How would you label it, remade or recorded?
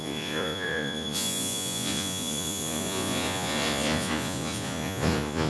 remade